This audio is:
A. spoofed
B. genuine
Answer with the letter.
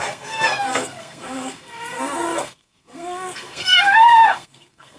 A